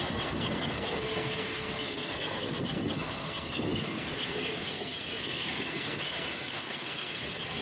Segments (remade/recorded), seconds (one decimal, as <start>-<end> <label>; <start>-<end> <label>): 0.0-7.6 remade